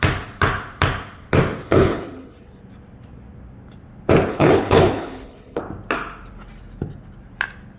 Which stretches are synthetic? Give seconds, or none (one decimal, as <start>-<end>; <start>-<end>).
1.6-2.6; 4.3-5.6